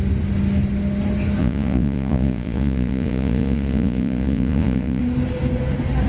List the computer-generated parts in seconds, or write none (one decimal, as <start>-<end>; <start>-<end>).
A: 1.4-5.0